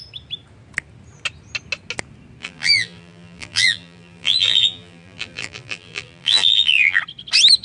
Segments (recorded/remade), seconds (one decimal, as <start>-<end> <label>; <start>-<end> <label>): 0.0-2.4 recorded; 2.4-7.0 remade; 7.0-7.6 recorded

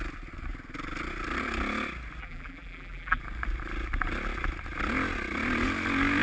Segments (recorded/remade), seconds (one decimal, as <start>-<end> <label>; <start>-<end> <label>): 0.0-2.2 recorded; 2.2-3.2 remade; 3.2-6.2 recorded

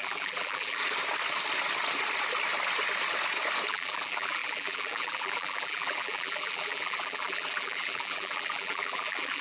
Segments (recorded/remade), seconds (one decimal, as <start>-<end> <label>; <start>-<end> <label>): 0.0-0.8 remade; 0.8-3.7 recorded; 3.7-9.4 remade

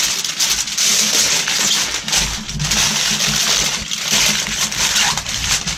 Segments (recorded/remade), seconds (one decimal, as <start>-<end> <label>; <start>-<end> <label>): 0.0-5.8 recorded